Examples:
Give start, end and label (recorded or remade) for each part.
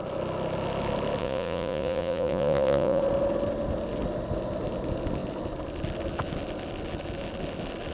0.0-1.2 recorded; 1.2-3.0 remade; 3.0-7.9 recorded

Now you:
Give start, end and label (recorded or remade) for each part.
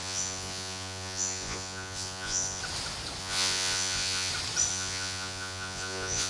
0.0-2.6 remade; 2.6-3.2 recorded; 3.2-4.3 remade; 4.3-4.7 recorded; 4.7-6.3 remade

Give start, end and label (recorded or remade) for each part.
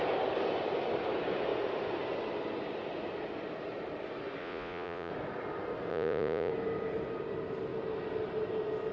0.0-4.4 recorded; 4.4-5.1 remade; 5.1-5.9 recorded; 5.9-6.5 remade; 6.5-8.9 recorded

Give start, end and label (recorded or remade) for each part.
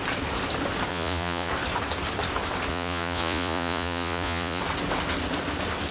0.0-0.9 recorded; 0.9-1.5 remade; 1.5-2.7 recorded; 2.7-4.6 remade; 4.6-5.9 recorded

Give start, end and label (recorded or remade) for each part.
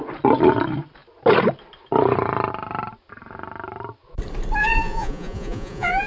0.0-4.6 recorded; 4.6-6.1 remade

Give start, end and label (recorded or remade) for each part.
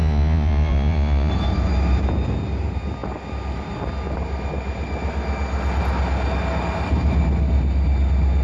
0.0-1.3 remade; 1.3-8.4 recorded